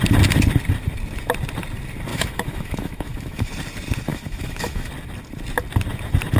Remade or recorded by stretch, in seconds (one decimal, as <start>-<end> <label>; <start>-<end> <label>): 0.0-2.1 recorded; 2.1-3.5 remade; 3.5-4.1 recorded; 4.1-4.9 remade; 4.9-6.4 recorded